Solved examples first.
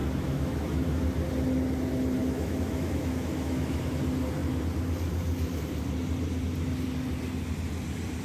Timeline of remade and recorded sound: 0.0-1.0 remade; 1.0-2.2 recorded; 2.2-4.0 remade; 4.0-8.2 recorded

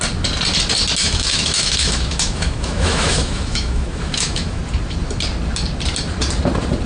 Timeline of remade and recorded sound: 0.0-1.0 recorded; 1.0-4.6 remade; 4.6-6.9 recorded

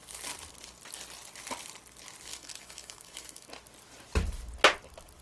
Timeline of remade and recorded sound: 0.0-2.3 recorded; 2.3-3.5 remade; 3.5-5.2 recorded

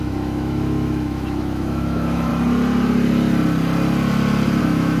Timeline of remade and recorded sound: 0.0-2.3 remade; 2.3-4.6 recorded; 4.6-5.0 remade

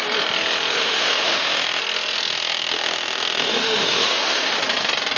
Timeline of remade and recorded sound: 0.0-0.8 recorded; 0.8-1.8 remade; 1.8-2.3 recorded; 2.3-4.6 remade; 4.6-5.2 recorded